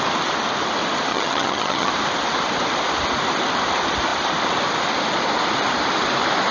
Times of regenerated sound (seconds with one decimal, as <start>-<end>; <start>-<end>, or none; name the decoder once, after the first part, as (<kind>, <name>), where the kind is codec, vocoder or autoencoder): 1.1-1.9 (vocoder, HiFi-GAN)

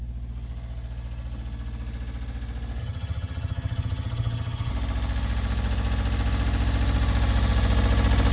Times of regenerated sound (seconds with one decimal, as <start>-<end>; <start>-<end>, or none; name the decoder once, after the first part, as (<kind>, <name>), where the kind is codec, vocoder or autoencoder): 2.8-4.7 (vocoder, HiFi-GAN)

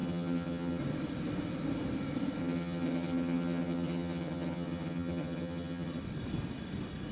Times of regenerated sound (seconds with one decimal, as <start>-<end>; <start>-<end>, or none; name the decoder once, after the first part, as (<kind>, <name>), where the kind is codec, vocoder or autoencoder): 0.0-0.8 (vocoder, HiFi-GAN); 2.4-6.0

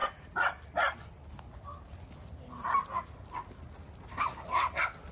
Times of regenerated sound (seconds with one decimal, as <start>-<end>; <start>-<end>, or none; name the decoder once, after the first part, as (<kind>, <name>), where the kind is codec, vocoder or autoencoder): none

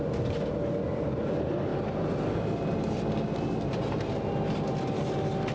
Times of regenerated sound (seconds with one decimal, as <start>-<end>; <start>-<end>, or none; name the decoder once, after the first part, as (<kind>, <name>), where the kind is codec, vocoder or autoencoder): none

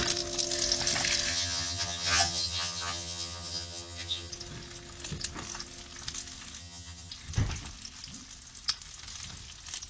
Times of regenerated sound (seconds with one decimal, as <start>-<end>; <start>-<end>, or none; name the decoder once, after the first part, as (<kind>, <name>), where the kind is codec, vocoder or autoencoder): 1.3-4.3 (vocoder, HiFi-GAN); 6.6-7.1